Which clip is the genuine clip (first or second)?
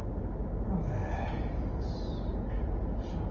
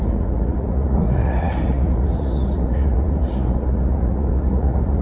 first